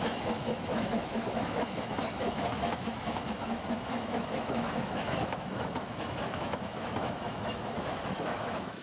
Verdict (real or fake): fake